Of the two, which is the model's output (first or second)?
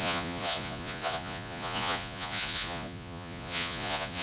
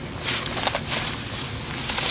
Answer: first